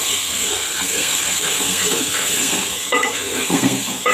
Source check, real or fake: fake